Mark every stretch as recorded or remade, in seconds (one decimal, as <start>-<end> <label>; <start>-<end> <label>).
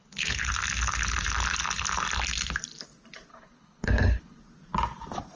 0.0-0.5 remade; 0.5-3.3 recorded; 3.3-4.4 remade; 4.4-5.4 recorded